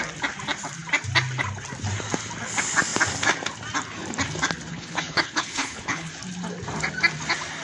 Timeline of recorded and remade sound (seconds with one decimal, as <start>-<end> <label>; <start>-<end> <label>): 0.0-4.7 recorded; 4.7-6.1 remade; 6.1-7.6 recorded